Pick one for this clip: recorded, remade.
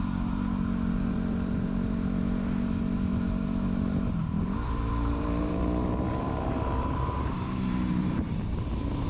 remade